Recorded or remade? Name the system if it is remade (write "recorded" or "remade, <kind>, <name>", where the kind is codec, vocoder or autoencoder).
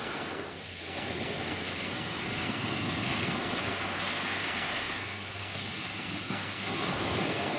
remade, codec, SNAC